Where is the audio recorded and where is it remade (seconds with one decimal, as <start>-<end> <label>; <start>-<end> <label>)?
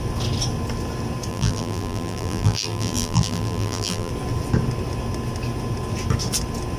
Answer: 0.0-1.3 recorded; 1.3-4.1 remade; 4.1-6.8 recorded